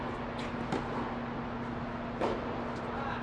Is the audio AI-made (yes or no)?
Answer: no